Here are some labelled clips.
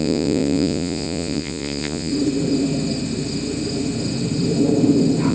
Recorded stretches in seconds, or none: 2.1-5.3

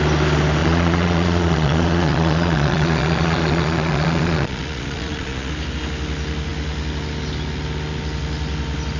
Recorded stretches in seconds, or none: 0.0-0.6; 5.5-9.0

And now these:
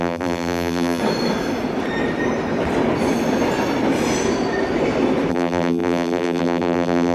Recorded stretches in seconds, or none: 1.0-5.3

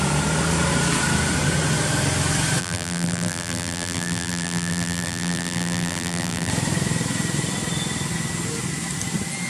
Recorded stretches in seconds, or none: 0.0-2.6; 6.5-9.5